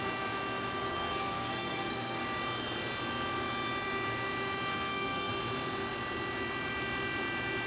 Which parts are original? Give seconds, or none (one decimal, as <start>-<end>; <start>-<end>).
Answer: 0.0-0.9; 2.2-4.7; 5.3-7.7